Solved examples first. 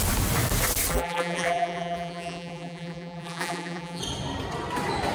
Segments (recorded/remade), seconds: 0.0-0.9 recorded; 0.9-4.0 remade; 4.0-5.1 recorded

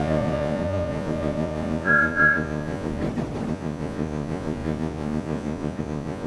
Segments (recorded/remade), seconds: 0.0-3.0 remade; 3.0-3.5 recorded; 3.5-6.3 remade

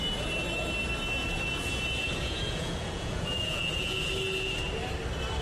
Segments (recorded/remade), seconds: 0.0-1.2 recorded; 1.2-4.1 remade; 4.1-5.4 recorded

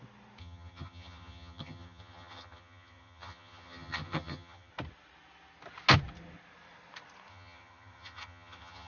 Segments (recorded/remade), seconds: 0.0-0.4 recorded; 0.4-4.7 remade; 4.7-7.3 recorded; 7.3-8.9 remade

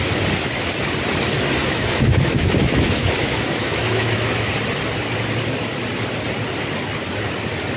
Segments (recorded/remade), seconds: 0.0-1.6 recorded; 1.6-4.5 remade; 4.5-7.8 recorded

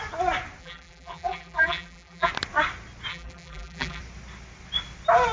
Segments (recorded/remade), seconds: 0.0-0.6 recorded; 0.6-2.3 remade; 2.3-3.1 recorded; 3.1-4.0 remade; 4.0-5.3 recorded